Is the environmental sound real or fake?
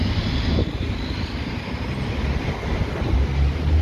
real